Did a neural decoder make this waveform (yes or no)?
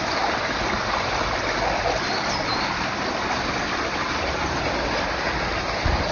no